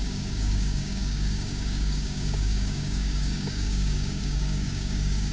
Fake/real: fake